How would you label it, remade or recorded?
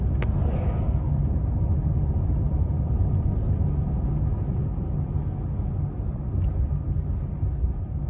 recorded